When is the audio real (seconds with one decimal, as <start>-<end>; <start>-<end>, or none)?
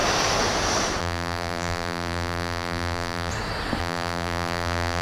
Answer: 0.0-1.0; 3.3-3.8